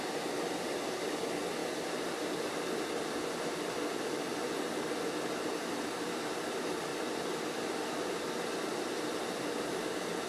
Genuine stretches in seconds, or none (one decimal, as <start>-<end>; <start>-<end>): 0.0-1.6; 4.7-6.9; 8.0-10.3